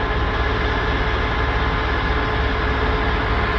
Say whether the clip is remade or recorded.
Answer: recorded